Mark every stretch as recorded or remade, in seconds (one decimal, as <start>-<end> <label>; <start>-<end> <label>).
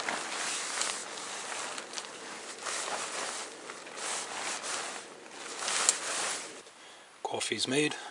0.0-8.1 recorded